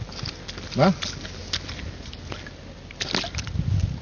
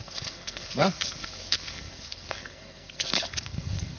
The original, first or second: first